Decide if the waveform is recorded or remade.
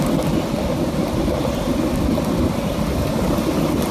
recorded